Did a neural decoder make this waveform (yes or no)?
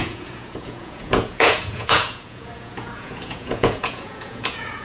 yes